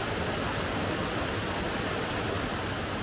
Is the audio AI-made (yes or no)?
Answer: no